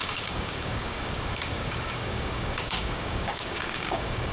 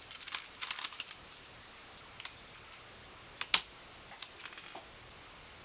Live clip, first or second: second